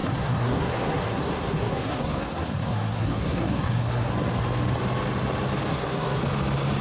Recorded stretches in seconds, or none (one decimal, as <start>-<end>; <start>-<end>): 4.1-5.7; 6.2-6.8